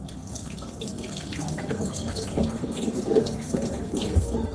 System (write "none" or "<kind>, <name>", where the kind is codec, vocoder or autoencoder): codec, SNAC